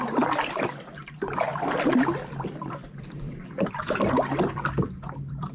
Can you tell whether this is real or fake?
fake